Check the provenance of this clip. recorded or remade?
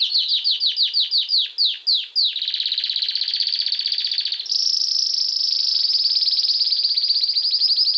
recorded